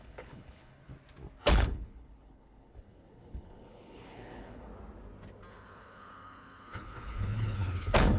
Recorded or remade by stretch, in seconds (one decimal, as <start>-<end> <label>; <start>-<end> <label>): 0.0-0.9 remade; 0.9-1.4 recorded; 1.4-4.7 remade; 4.7-5.5 recorded; 5.5-8.2 remade